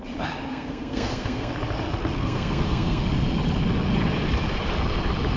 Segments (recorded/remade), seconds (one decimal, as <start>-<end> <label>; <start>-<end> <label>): 0.0-0.5 recorded; 0.5-1.5 remade; 1.5-2.2 recorded; 2.2-3.0 remade; 3.0-5.4 recorded